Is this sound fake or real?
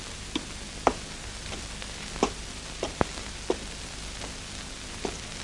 real